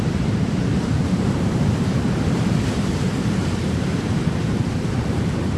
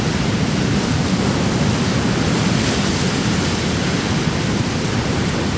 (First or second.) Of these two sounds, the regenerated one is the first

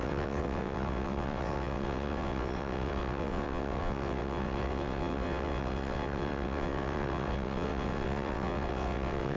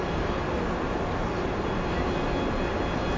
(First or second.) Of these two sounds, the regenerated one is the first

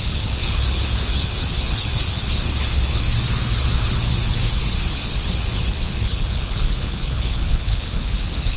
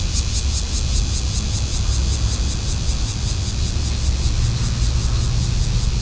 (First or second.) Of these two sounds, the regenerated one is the first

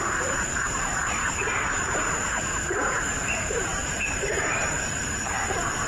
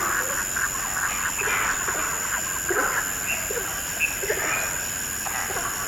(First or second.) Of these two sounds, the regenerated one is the first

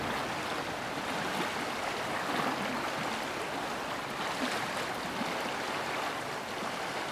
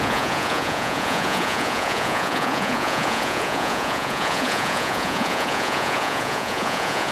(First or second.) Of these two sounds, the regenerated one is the second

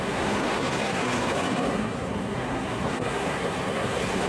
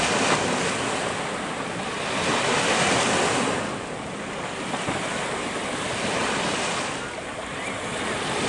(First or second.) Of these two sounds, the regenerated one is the first